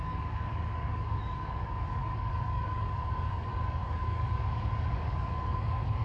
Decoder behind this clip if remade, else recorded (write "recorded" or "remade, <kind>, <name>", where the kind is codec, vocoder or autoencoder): remade, codec, DAC